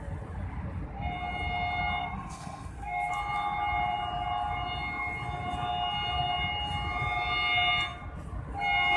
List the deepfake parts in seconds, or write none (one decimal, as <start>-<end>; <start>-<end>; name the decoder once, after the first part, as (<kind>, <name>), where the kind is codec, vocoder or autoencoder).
2.0-3.1 (codec, SNAC)